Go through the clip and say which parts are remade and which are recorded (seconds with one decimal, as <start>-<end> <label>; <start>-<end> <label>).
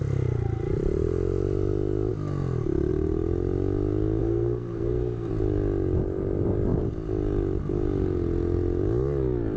0.0-4.2 recorded; 4.2-5.3 remade; 5.3-9.6 recorded